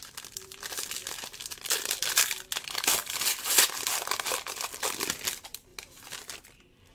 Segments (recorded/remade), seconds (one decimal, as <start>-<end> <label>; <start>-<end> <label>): 0.0-1.0 remade; 1.0-1.6 recorded; 1.6-5.7 remade; 5.7-6.2 recorded; 6.2-6.9 remade

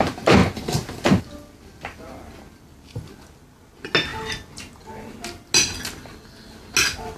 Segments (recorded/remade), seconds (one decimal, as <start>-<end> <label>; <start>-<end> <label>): 0.0-7.2 recorded

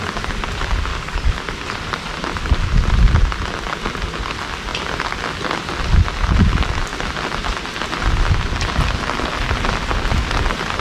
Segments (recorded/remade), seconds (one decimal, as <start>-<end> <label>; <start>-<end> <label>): 0.0-0.9 recorded; 0.9-1.4 remade; 1.4-10.8 recorded